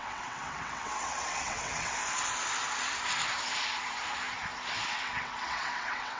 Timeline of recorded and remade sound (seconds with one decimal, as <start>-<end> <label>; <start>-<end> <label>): 0.0-2.0 remade; 2.0-4.9 recorded; 4.9-6.2 remade